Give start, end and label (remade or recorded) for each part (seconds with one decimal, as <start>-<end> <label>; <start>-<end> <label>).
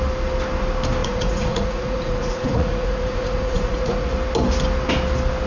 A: 0.0-1.0 recorded; 1.0-4.1 remade; 4.1-5.5 recorded